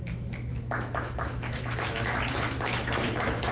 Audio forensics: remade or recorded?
remade